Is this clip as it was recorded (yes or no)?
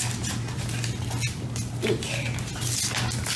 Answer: yes